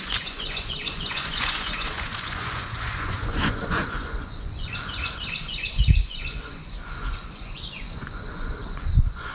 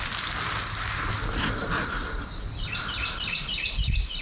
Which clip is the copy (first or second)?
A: first